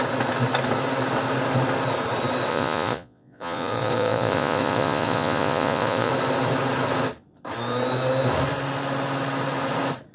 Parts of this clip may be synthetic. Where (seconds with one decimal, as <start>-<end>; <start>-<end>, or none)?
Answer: 2.5-6.1